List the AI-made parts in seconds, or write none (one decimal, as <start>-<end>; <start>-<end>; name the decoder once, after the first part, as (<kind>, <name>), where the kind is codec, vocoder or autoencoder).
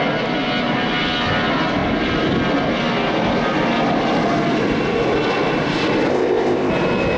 6.1-6.7 (codec, ZipCodec)